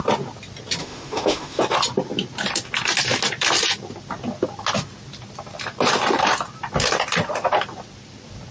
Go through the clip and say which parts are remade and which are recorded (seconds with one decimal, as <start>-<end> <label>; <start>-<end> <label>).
0.0-0.8 recorded; 0.8-1.6 remade; 1.6-8.5 recorded